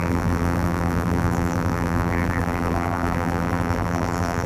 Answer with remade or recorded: remade